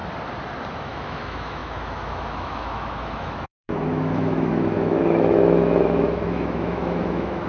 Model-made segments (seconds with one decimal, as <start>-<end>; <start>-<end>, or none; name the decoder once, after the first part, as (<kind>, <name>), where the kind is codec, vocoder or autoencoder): 0.7-7.5 (autoencoder, DAC-VAE)